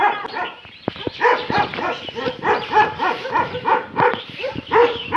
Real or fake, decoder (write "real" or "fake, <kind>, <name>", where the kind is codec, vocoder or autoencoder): fake, vocoder, BigVGAN v2